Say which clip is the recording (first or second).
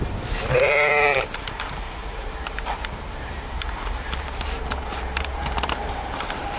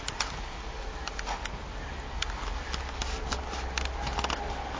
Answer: second